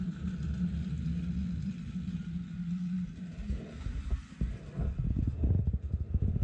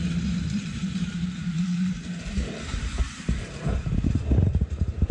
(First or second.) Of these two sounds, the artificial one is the second